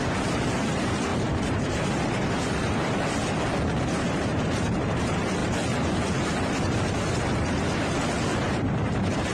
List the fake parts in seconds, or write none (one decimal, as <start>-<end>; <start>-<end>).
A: 0.0-3.2; 3.9-9.3